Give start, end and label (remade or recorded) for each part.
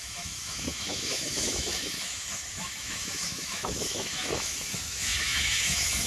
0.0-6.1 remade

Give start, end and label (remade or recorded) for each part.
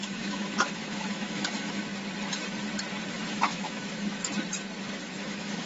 0.0-1.8 remade; 1.8-3.1 recorded; 3.1-4.2 remade; 4.2-4.8 recorded; 4.8-5.7 remade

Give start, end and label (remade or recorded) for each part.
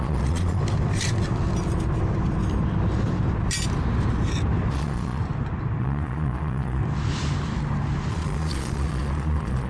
0.0-0.6 remade; 0.6-4.7 recorded; 4.7-5.2 remade; 5.2-5.8 recorded; 5.8-6.8 remade; 6.8-8.1 recorded; 8.1-9.7 remade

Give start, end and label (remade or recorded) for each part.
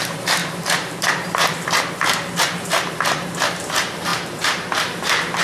0.0-5.4 remade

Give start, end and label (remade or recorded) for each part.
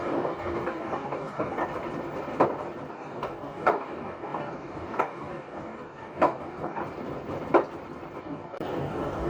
0.0-1.6 remade; 1.6-2.9 recorded; 2.9-6.8 remade; 6.8-8.2 recorded; 8.2-9.3 remade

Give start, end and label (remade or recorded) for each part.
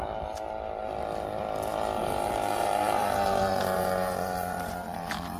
0.0-2.0 recorded; 2.0-5.4 remade